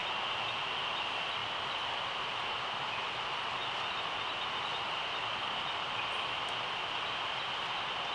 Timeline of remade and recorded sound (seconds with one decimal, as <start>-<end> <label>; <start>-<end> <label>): 0.0-8.1 recorded